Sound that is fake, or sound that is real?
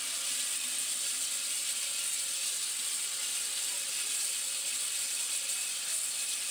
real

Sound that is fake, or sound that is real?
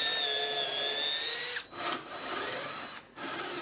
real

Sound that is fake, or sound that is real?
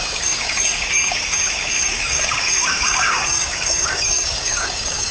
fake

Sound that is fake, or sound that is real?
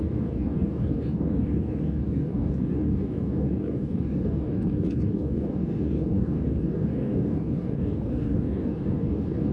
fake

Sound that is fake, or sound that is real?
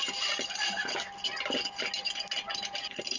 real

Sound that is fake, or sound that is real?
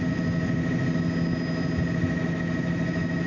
real